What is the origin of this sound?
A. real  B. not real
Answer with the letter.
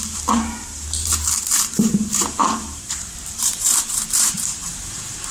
B